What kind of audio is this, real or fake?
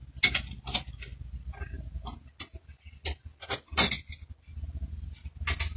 real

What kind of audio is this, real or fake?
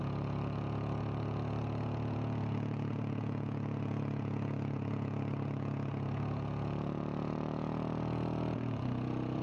fake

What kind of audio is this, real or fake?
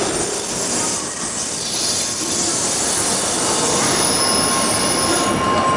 real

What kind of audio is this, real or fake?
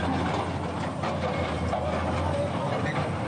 real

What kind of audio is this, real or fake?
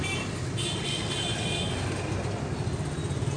real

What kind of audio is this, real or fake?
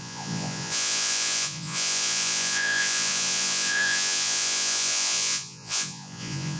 fake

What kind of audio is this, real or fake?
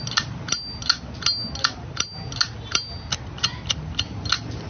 real